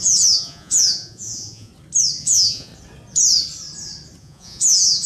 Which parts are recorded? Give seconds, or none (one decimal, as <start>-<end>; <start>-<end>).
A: 1.7-2.2; 2.7-4.2